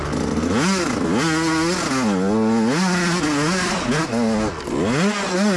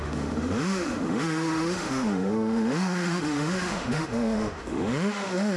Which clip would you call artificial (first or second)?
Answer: second